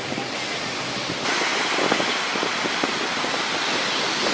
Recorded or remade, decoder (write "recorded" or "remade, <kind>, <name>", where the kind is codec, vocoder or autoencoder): recorded